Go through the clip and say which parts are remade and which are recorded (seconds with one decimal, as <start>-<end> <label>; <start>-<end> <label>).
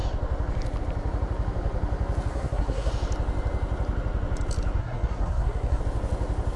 0.0-2.3 recorded; 2.3-2.9 remade; 2.9-4.8 recorded; 4.8-5.8 remade; 5.8-6.6 recorded